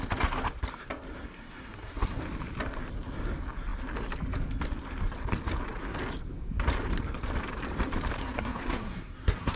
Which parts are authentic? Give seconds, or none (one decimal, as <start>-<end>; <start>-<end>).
0.0-1.2; 2.2-8.2